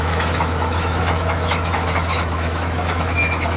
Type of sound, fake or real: fake